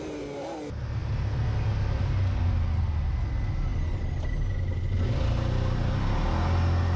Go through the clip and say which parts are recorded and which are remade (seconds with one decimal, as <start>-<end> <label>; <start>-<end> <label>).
0.0-7.0 recorded